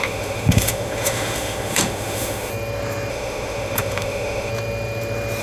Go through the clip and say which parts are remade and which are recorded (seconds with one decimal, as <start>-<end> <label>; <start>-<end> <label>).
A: 0.0-2.5 remade; 2.5-3.1 recorded; 3.1-4.5 remade; 4.5-5.4 recorded